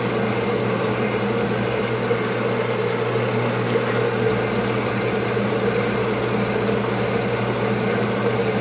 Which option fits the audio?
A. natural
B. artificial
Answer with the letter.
A